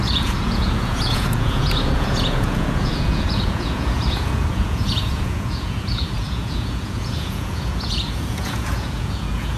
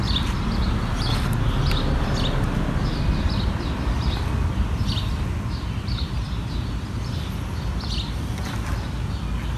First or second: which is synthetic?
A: first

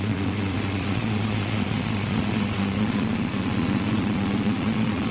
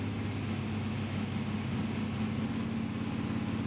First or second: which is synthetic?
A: first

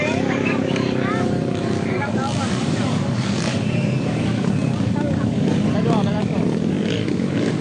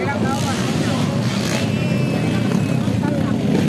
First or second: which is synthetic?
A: first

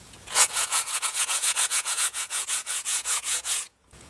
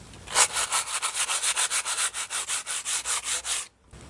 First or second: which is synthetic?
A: first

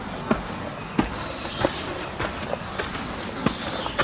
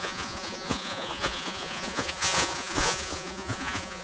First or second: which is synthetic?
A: second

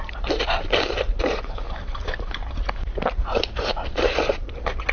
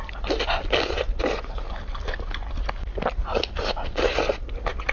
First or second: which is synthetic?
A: first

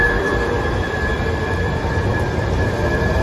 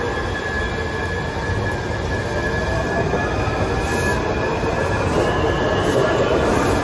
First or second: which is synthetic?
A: first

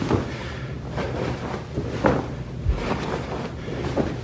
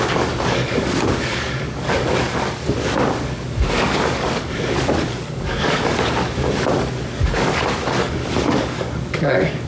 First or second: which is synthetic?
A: second